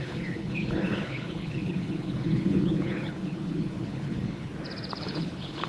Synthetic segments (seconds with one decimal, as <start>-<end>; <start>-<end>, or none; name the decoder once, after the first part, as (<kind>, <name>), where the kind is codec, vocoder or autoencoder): 0.0-4.5 (codec, HILCodec); 5.0-5.7